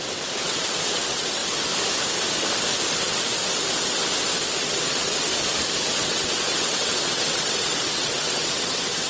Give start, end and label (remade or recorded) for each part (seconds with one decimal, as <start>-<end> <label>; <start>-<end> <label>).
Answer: 0.0-1.4 remade; 1.4-4.6 recorded; 4.6-5.3 remade; 5.3-5.8 recorded; 5.8-9.1 remade